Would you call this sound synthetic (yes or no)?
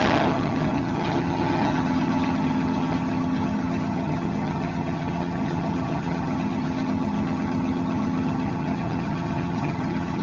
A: yes